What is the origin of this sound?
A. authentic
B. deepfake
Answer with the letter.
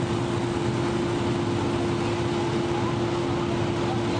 A